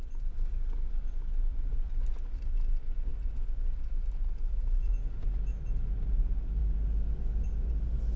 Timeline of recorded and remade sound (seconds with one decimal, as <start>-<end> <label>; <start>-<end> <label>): 0.0-8.2 recorded